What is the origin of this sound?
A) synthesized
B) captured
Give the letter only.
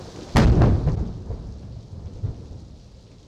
B